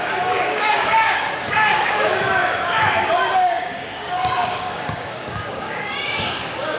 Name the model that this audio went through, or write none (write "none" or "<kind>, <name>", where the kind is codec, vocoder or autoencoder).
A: codec, DAC